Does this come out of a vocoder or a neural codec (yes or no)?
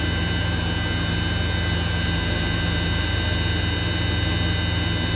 no